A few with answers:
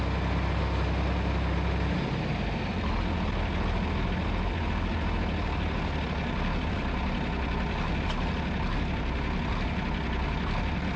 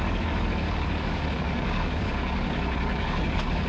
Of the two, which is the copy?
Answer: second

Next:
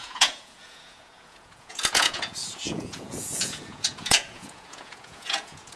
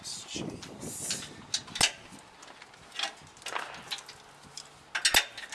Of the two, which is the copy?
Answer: first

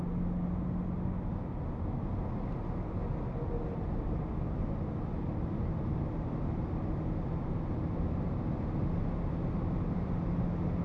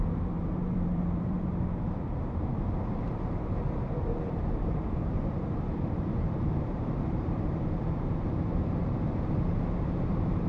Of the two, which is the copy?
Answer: second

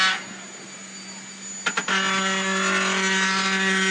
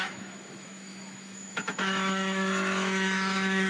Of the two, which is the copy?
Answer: second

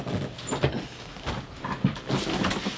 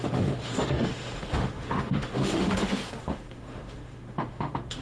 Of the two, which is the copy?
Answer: second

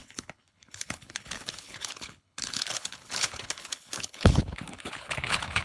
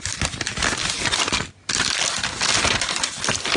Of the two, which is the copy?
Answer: first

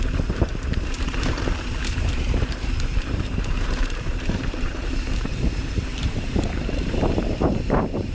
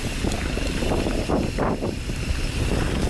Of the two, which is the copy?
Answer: first